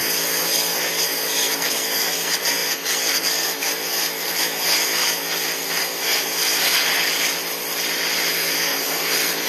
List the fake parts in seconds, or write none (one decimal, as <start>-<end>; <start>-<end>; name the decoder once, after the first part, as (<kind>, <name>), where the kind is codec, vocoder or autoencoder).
0.0-6.9 (codec, SNAC); 8.3-9.5